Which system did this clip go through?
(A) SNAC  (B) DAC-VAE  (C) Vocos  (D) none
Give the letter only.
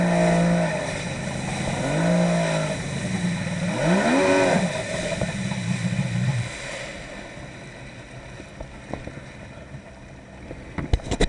D